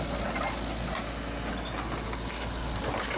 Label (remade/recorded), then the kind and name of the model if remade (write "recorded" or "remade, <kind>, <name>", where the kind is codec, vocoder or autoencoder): recorded